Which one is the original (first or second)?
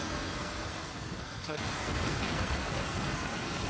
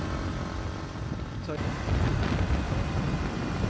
second